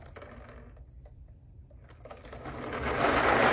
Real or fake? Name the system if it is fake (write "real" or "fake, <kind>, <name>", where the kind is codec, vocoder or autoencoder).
real